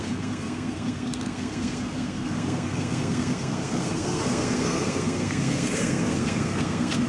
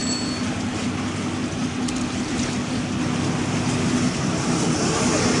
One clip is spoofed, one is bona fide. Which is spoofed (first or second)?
first